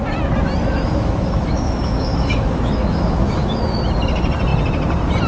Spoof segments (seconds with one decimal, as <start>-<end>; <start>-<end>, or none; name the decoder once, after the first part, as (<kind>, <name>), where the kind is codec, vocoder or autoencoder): 0.6-3.8 (autoencoder, DAC-VAE)